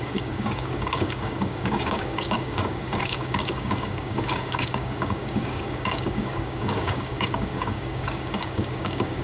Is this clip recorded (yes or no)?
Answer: no